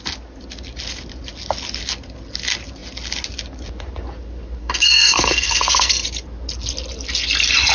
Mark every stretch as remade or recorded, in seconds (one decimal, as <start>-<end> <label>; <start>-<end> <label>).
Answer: 0.0-4.6 recorded; 4.6-5.9 remade; 5.9-7.7 recorded